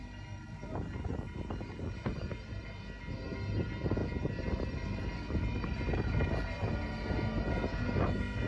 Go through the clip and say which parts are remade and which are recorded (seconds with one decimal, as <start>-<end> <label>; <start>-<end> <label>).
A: 0.0-8.5 recorded